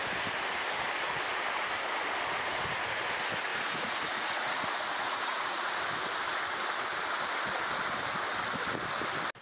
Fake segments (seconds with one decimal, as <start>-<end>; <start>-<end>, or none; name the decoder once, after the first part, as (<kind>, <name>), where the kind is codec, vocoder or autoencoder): 3.5-5.7 (vocoder, Vocos)